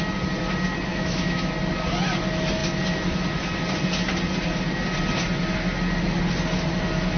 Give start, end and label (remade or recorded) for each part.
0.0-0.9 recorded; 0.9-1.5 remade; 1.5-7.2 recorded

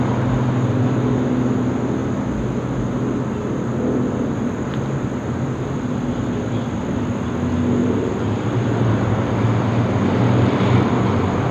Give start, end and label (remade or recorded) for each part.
0.0-7.8 recorded; 7.8-8.8 remade; 8.8-11.5 recorded